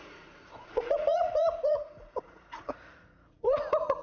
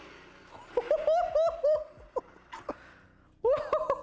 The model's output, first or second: first